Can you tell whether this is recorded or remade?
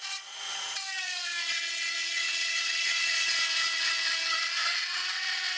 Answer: remade